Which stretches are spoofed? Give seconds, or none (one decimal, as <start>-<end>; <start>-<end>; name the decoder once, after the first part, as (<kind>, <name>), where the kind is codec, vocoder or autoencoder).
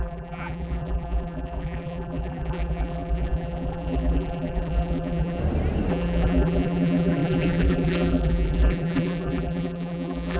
0.0-5.4 (vocoder, BigVGAN v2); 5.9-10.4